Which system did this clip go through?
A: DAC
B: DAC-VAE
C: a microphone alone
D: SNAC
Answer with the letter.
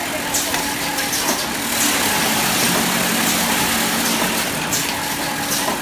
C